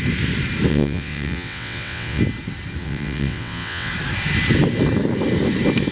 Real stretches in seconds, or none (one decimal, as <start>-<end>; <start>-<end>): 0.0-0.7; 2.2-2.8; 3.9-5.9